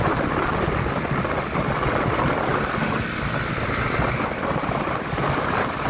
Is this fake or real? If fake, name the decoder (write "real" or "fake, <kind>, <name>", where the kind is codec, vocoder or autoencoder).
real